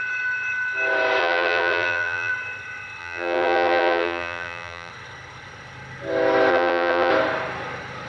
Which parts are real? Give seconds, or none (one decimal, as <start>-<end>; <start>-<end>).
0.0-1.2; 2.3-3.0; 4.9-6.5; 7.1-8.1